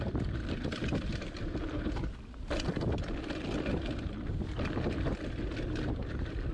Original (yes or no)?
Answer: yes